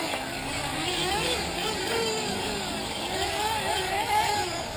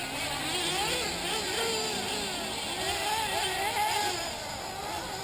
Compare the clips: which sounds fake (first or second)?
first